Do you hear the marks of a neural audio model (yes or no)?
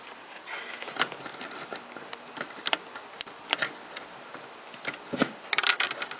no